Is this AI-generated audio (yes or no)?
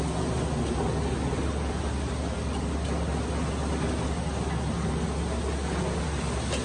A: no